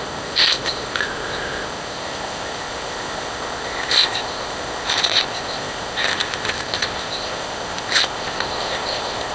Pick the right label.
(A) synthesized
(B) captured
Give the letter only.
A